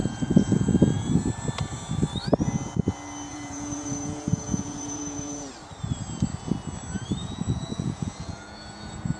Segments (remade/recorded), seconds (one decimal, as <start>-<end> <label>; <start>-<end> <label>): 0.0-1.1 remade; 1.1-3.3 recorded; 3.3-5.5 remade; 5.5-7.2 recorded; 7.2-9.2 remade